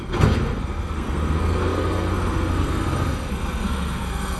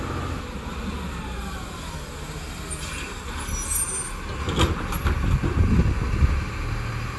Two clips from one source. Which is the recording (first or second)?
second